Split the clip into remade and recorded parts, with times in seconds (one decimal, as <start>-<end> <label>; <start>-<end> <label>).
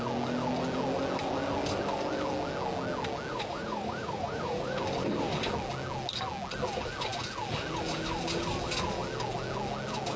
0.0-3.3 recorded; 3.3-4.8 remade; 4.8-10.2 recorded